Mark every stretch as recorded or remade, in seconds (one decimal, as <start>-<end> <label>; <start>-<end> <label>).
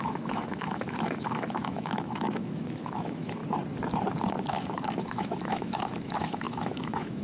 0.0-3.4 remade; 3.4-4.5 recorded; 4.5-7.2 remade